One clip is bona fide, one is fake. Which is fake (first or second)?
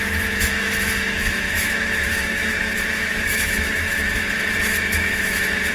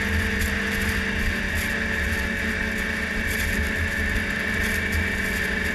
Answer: first